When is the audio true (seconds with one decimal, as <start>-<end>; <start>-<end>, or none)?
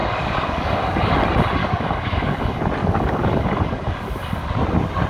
1.1-1.6; 2.4-2.8; 4.5-5.1